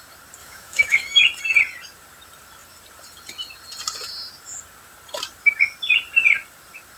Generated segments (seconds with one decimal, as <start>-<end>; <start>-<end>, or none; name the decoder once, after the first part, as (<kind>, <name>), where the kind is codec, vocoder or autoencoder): 0.4-1.2 (autoencoder, DAC-VAE)